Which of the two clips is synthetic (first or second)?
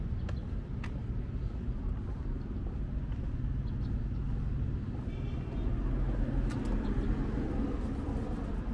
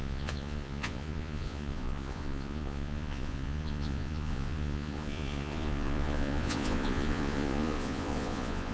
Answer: second